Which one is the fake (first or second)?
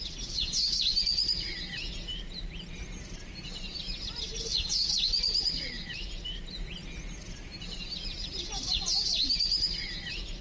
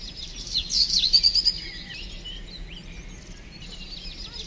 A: first